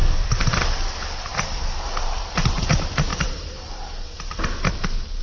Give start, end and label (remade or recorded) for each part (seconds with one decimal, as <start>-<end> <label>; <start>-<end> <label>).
0.0-3.1 recorded; 3.1-4.4 remade; 4.4-5.2 recorded